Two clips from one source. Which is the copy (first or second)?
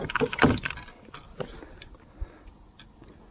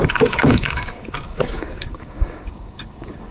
second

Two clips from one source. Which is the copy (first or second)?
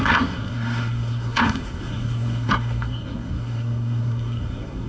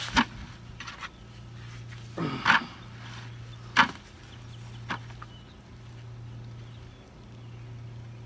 first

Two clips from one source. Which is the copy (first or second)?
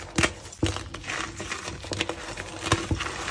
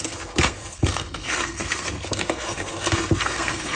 second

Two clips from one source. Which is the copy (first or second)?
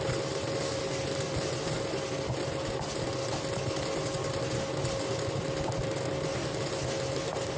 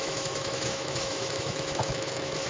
second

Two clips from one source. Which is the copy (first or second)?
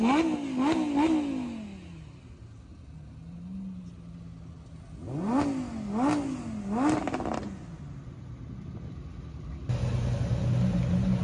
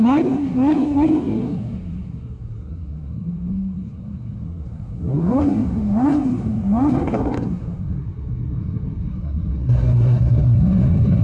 second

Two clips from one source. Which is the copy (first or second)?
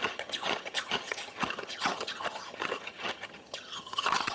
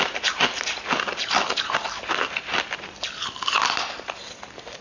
first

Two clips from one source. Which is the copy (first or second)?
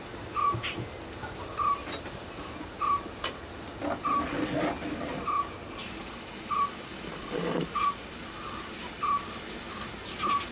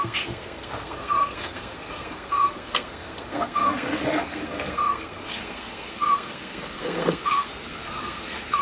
second